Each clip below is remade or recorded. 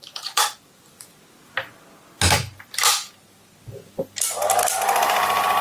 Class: recorded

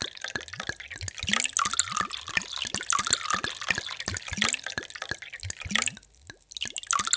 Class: recorded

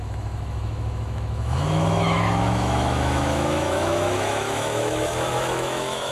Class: remade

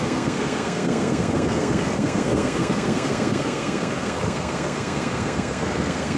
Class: remade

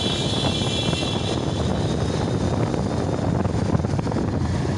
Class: recorded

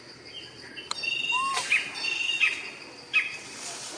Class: recorded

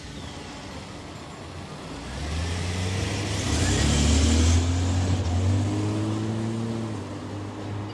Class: recorded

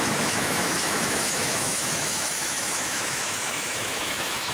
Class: remade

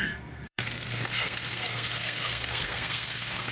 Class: remade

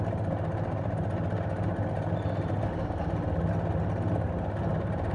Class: recorded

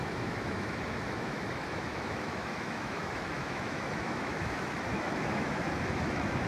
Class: remade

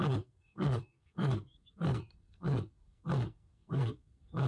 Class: remade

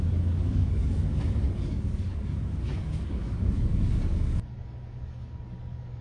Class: remade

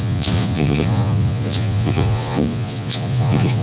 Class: remade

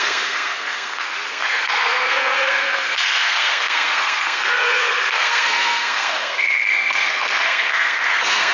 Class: remade